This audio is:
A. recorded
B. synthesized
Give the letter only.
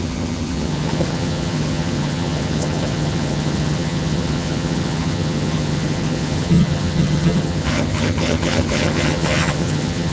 B